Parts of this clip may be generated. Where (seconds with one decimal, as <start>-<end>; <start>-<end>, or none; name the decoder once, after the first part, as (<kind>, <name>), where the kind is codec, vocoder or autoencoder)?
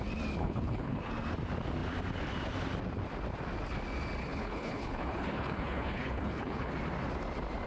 0.4-1.1 (codec, HILCodec); 4.2-6.7